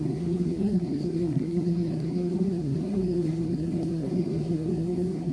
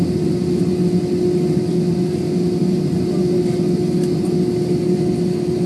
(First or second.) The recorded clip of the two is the second